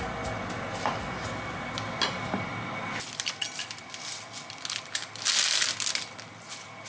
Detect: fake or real real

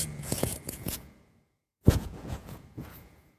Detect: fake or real fake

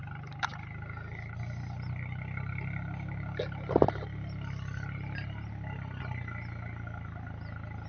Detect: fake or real real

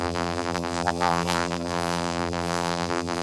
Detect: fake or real fake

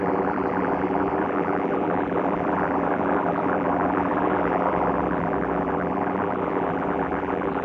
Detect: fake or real fake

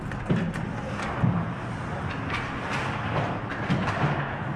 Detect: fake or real real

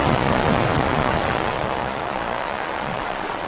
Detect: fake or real fake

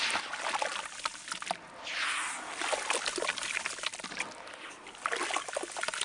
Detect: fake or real real